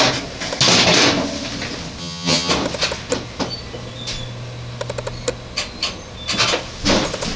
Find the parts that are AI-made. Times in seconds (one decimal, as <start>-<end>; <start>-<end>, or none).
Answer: 2.0-2.5